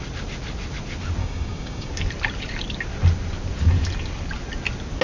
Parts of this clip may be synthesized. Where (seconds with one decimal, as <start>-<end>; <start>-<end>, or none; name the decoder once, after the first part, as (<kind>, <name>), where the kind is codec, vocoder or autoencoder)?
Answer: 1.2-1.9 (codec, DAC)